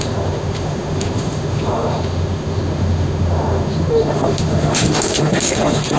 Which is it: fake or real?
fake